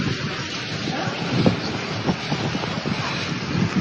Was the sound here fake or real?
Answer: real